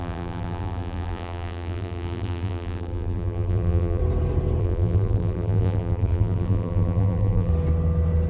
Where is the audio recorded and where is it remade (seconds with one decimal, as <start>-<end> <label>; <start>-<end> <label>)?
0.0-4.0 remade; 4.0-4.6 recorded; 4.6-7.5 remade; 7.5-8.3 recorded